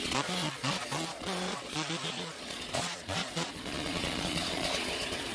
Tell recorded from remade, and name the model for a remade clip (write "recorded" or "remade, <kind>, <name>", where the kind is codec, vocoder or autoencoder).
remade, vocoder, Vocos